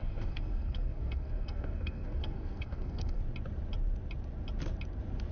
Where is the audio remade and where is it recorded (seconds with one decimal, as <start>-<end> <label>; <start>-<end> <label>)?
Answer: 0.0-3.2 remade; 3.2-5.3 recorded